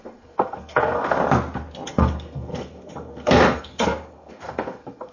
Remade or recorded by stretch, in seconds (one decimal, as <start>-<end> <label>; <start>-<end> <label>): 0.0-1.2 remade; 1.2-1.9 recorded; 1.9-5.1 remade